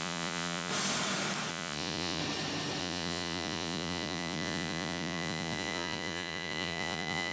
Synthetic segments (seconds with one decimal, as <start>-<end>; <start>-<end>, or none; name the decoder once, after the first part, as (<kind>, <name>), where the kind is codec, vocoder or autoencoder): 0.0-0.7 (vocoder, Vocos); 1.5-2.2; 2.8-7.3

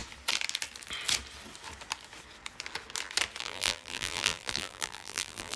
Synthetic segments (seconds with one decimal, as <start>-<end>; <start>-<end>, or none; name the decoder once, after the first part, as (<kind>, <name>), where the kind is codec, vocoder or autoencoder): 3.4-5.6 (vocoder, BigVGAN v2)

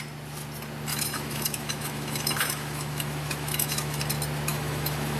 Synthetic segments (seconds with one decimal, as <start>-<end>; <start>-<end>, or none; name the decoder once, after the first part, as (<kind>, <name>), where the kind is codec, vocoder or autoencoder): 0.9-4.0 (autoencoder, DAC-VAE); 4.5-5.2

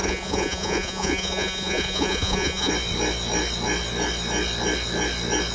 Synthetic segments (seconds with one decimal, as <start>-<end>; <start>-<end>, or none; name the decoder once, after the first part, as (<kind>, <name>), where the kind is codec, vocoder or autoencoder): 0.0-2.7 (vocoder, Vocos)